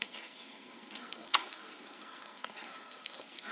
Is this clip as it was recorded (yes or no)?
no